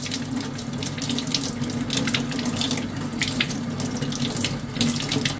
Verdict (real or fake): real